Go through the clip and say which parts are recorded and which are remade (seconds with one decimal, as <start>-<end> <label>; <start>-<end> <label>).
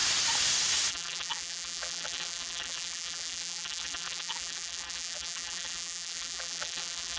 0.0-0.9 recorded; 0.9-7.2 remade